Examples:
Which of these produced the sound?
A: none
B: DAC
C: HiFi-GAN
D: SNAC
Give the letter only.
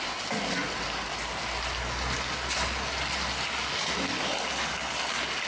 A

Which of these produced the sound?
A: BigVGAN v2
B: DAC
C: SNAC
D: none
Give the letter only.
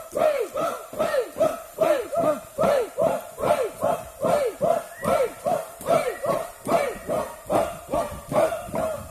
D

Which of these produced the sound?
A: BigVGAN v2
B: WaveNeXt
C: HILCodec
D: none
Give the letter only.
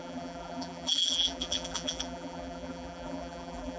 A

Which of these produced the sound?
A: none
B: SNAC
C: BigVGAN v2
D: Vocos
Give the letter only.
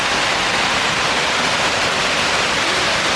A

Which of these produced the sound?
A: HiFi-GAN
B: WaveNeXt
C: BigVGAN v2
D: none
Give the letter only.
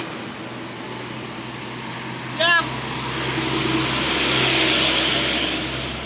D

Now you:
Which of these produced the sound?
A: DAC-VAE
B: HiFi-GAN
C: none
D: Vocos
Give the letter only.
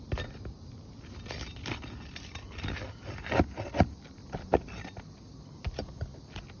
C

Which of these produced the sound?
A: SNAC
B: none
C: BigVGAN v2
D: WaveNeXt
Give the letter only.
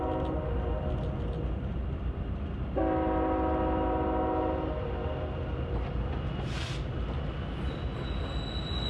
B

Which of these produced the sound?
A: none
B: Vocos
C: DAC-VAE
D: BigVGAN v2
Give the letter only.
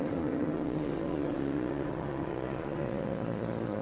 B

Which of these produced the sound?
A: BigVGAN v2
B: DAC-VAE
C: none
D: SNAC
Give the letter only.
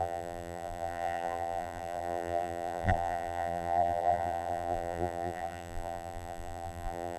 A